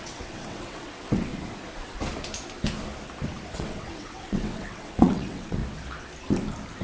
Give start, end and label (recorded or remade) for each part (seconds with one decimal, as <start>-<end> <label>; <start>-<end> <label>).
0.0-1.3 remade; 1.3-3.5 recorded; 3.5-5.6 remade; 5.6-6.8 recorded